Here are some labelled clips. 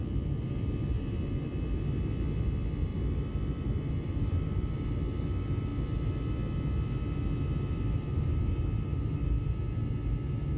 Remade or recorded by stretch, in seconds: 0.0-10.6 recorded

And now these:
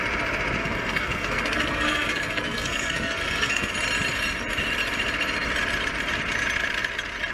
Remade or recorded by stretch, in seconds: 0.0-0.6 recorded; 0.6-3.7 remade; 3.7-7.3 recorded

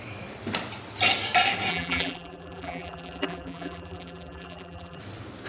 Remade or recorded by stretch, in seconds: 0.0-1.7 recorded; 1.7-5.0 remade; 5.0-5.5 recorded

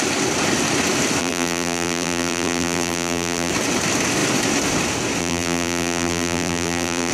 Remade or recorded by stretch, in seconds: 0.0-1.2 recorded; 1.2-3.5 remade; 3.5-5.2 recorded; 5.2-7.1 remade

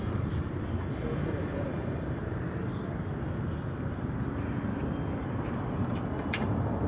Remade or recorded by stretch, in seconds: 0.0-0.4 remade; 0.4-0.9 recorded; 0.9-2.2 remade; 2.2-6.3 recorded; 6.3-6.9 remade